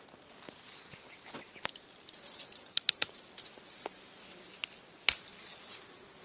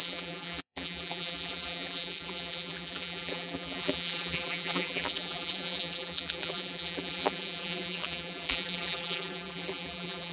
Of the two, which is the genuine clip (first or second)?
first